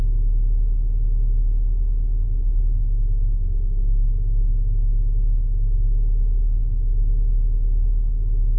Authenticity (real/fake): real